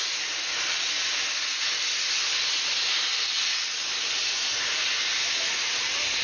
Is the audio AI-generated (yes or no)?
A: no